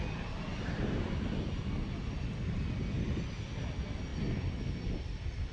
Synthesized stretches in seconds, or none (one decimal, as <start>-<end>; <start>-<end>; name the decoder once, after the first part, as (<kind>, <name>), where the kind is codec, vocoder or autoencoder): none